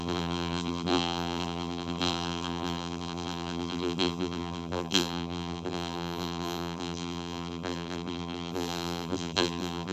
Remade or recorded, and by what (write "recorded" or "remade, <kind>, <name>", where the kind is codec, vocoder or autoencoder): remade, vocoder, BigVGAN v2